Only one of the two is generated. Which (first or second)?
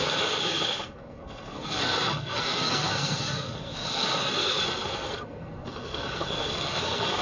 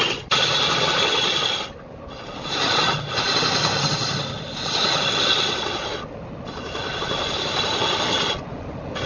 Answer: first